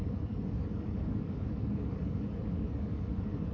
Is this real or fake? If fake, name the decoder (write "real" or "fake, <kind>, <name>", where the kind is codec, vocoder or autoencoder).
fake, codec, DAC